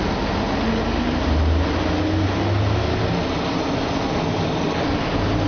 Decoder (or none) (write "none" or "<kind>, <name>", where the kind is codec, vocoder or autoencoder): none